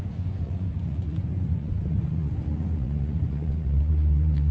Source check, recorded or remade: remade